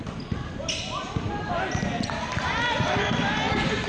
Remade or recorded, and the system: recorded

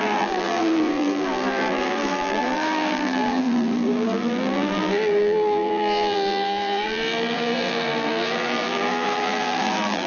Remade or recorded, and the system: remade, vocoder, BigVGAN v2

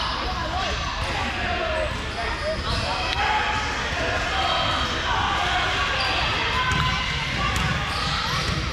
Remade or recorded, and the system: recorded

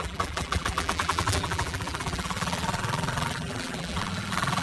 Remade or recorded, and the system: remade, vocoder, BigVGAN v2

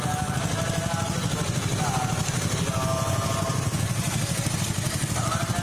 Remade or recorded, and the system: recorded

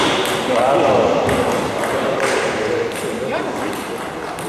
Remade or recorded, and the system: recorded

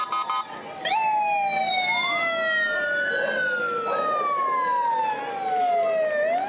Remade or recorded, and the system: recorded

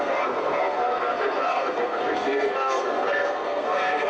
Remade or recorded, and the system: remade, codec, SNAC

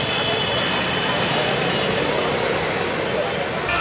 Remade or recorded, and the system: recorded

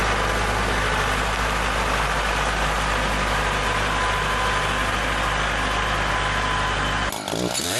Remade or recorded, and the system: recorded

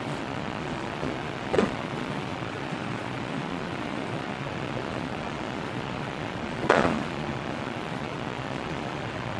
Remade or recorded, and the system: remade, vocoder, Vocos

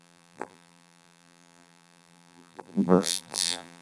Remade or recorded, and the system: remade, vocoder, BigVGAN v2